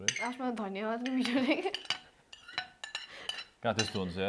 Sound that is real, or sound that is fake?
real